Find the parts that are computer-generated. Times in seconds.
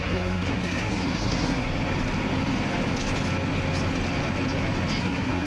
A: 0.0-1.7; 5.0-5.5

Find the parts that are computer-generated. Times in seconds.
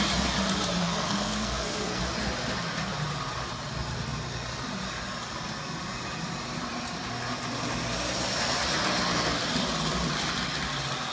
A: 0.8-2.0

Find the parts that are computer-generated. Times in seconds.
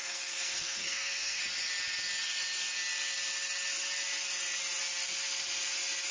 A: 0.0-1.4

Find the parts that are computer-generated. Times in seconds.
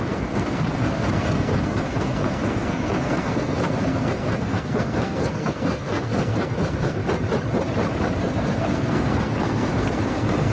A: 0.0-7.0; 8.2-10.5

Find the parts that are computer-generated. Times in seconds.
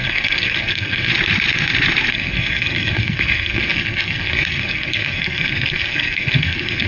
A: 0.0-1.1; 2.1-6.9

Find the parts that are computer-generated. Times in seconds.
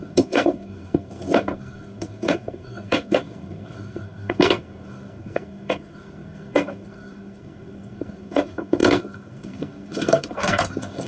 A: 0.0-11.1